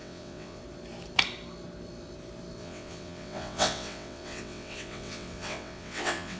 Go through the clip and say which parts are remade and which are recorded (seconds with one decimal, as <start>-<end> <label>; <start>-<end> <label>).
0.0-0.6 remade; 0.6-2.6 recorded; 2.6-6.4 remade